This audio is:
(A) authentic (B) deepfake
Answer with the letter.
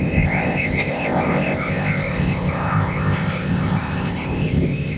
B